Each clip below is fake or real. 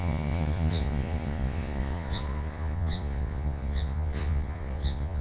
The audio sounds fake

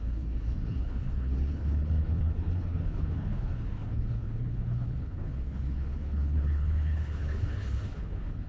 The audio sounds fake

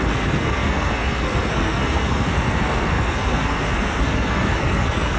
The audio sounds fake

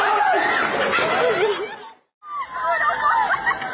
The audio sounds real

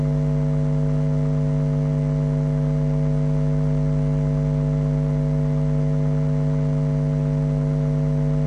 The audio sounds real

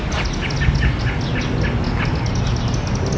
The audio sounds real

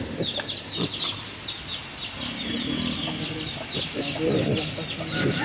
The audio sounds real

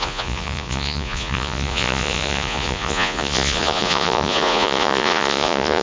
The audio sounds fake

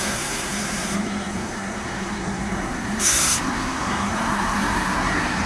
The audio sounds fake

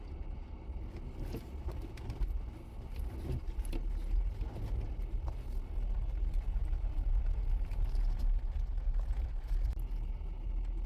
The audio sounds real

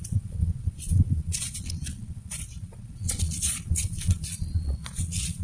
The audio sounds fake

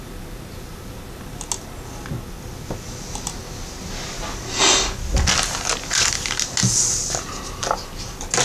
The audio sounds real